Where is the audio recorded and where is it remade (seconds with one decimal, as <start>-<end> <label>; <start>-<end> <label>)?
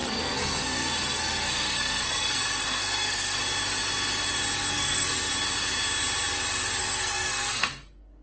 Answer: 0.0-3.4 remade; 3.4-4.7 recorded; 4.7-5.3 remade; 5.3-6.8 recorded; 6.8-8.2 remade